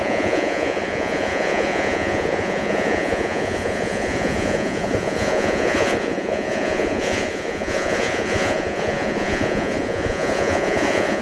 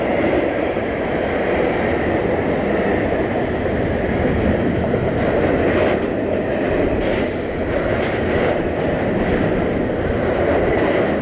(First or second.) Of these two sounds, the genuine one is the second